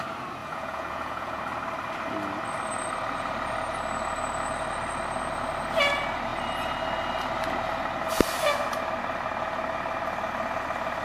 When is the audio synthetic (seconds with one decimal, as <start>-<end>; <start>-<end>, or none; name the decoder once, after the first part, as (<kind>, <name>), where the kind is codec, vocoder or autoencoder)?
0.4-1.4 (vocoder, Vocos)